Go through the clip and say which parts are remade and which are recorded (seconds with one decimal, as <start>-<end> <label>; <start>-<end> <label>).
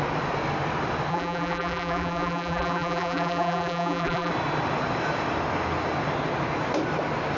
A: 0.0-1.1 recorded; 1.1-4.3 remade; 4.3-7.4 recorded